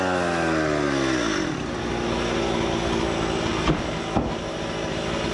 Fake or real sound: real